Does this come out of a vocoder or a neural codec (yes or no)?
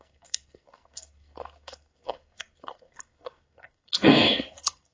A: yes